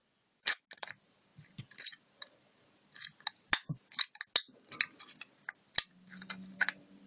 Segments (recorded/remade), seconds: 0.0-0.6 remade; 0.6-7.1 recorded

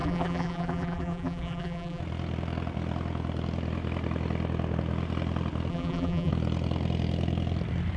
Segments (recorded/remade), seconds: 0.0-2.0 remade; 2.0-5.7 recorded; 5.7-6.3 remade; 6.3-8.0 recorded

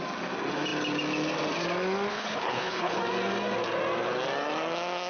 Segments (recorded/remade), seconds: 0.0-2.1 recorded; 2.1-3.0 remade; 3.0-5.1 recorded